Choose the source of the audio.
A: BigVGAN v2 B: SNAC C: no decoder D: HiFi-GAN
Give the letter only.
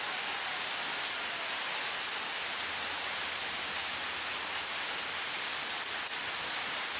C